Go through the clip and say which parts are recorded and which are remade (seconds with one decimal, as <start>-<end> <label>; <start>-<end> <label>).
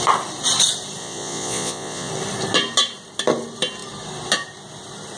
0.0-1.0 recorded; 1.0-2.1 remade; 2.1-5.2 recorded